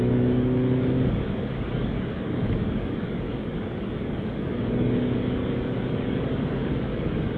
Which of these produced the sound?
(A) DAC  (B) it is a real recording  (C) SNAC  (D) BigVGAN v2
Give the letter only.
A